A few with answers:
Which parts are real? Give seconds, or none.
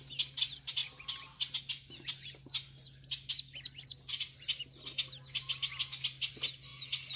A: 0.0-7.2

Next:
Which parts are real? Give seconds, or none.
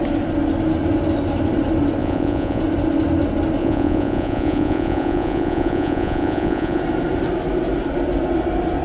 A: 0.0-2.0; 2.6-3.6; 6.8-8.8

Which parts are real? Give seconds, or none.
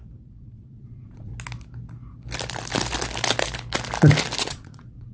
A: 1.3-4.4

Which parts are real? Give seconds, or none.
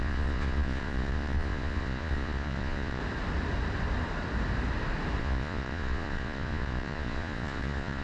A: 3.0-5.2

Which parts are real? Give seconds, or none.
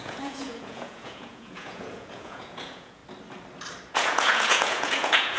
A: 3.0-3.9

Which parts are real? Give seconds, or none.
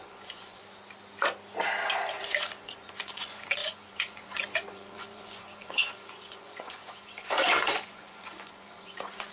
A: 0.6-2.1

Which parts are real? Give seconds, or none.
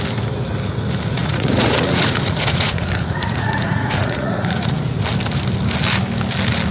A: 0.0-1.2; 5.0-6.7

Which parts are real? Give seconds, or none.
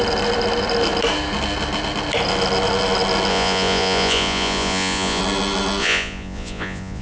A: 0.0-3.3; 5.2-5.8